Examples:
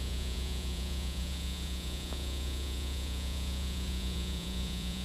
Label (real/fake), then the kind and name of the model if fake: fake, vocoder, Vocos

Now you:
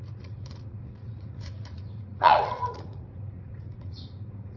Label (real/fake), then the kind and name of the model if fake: fake, vocoder, Vocos